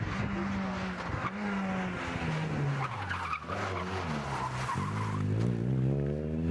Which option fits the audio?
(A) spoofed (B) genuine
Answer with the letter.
B